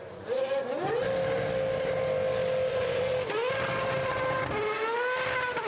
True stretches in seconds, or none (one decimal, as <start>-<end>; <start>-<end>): 0.4-2.7; 3.1-5.7